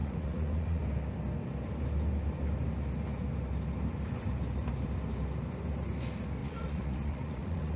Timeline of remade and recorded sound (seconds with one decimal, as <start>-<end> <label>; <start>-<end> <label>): 0.0-0.8 remade; 0.8-6.4 recorded; 6.4-7.8 remade